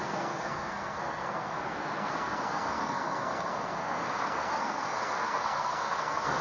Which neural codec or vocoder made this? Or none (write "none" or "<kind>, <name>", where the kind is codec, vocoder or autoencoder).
codec, SNAC